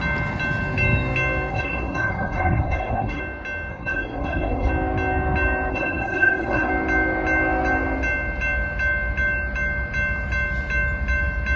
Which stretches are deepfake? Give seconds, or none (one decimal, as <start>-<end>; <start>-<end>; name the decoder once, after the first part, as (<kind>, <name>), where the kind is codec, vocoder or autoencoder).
1.5-3.2 (codec, SNAC); 3.7-4.7; 5.7-6.7